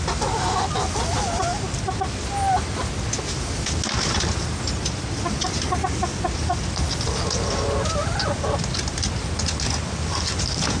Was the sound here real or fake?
real